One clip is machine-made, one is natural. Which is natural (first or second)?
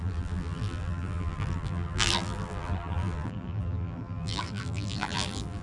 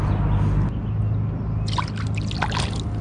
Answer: second